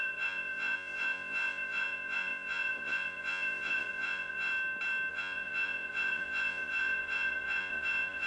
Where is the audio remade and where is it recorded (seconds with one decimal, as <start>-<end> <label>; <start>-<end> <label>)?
0.0-4.5 remade; 4.5-5.1 recorded; 5.1-8.3 remade

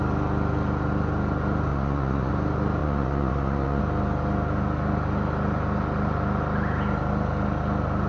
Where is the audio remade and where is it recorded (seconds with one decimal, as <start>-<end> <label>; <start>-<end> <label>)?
0.0-1.7 recorded; 1.7-2.3 remade; 2.3-2.8 recorded; 2.8-3.8 remade; 3.8-8.1 recorded

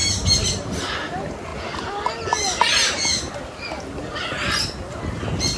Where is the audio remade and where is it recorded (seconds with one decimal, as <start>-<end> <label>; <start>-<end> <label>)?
0.0-5.6 recorded